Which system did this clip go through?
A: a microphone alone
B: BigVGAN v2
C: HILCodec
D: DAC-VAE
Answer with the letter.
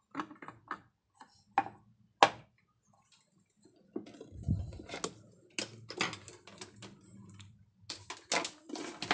A